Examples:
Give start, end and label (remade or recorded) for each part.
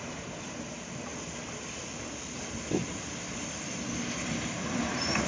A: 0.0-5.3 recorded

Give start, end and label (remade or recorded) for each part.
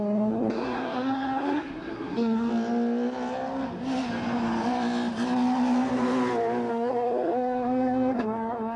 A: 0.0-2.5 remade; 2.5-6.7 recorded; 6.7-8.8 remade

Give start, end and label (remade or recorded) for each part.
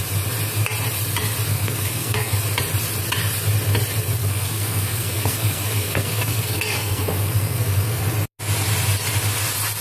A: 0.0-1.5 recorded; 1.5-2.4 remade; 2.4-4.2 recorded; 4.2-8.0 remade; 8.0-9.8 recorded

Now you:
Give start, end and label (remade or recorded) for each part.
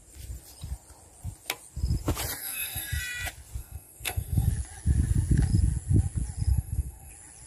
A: 0.0-2.4 recorded; 2.4-3.0 remade; 3.0-3.6 recorded; 3.6-4.5 remade; 4.5-6.5 recorded; 6.5-7.1 remade; 7.1-7.5 recorded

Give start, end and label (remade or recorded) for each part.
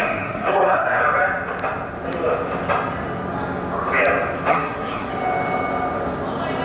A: 0.0-1.0 remade; 1.0-4.5 recorded; 4.5-5.1 remade; 5.1-6.6 recorded